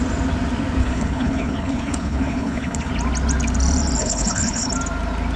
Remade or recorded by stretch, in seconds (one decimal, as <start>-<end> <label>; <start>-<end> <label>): 0.0-0.8 recorded; 0.8-2.9 remade; 2.9-4.0 recorded; 4.0-4.7 remade; 4.7-5.4 recorded